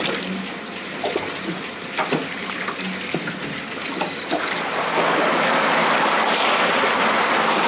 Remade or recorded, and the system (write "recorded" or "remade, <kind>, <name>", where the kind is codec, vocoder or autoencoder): recorded